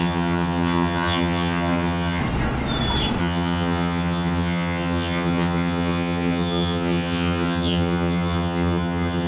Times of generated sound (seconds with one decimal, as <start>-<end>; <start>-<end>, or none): 0.0-2.2; 3.2-9.3